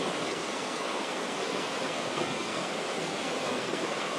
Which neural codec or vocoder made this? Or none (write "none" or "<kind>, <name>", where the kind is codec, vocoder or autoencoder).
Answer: codec, SNAC